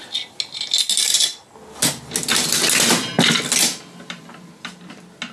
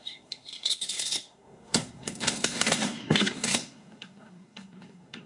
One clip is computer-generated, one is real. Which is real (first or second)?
first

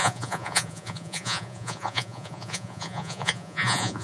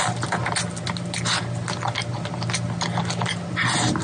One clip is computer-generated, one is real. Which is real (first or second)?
second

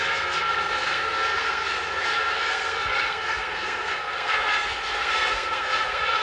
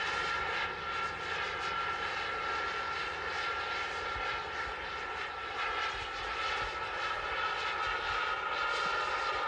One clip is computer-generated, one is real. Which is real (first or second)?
second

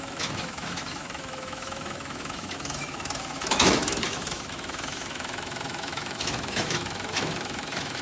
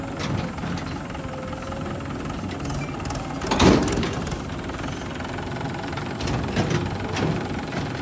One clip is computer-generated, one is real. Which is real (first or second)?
second